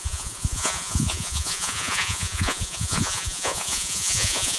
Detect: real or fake fake